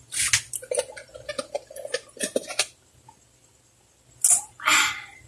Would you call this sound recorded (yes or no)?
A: yes